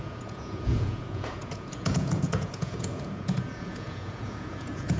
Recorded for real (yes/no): no